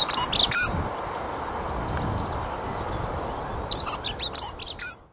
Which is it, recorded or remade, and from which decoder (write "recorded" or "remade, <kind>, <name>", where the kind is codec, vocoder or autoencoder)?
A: recorded